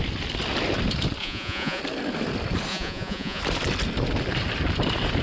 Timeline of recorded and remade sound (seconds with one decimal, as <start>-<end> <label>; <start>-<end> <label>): 0.0-1.2 recorded; 1.2-1.8 remade; 1.8-2.7 recorded; 2.7-3.4 remade; 3.4-5.2 recorded